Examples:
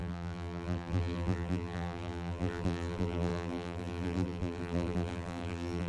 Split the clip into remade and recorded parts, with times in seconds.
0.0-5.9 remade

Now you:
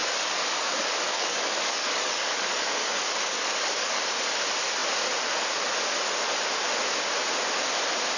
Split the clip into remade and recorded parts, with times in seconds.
0.0-4.0 remade; 4.0-8.2 recorded

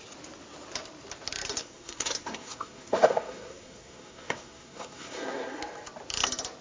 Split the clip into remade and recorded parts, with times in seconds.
0.0-1.6 recorded; 1.6-5.6 remade; 5.6-6.6 recorded

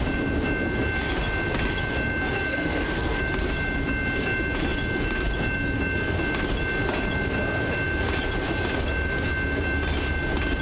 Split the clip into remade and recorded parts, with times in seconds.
0.0-2.5 recorded; 2.5-3.2 remade; 3.2-10.6 recorded

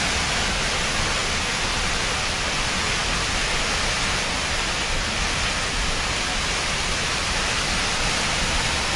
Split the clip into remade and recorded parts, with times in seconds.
0.0-9.0 recorded